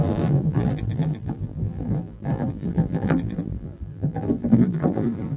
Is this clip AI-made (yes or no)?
yes